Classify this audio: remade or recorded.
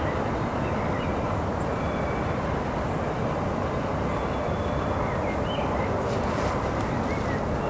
recorded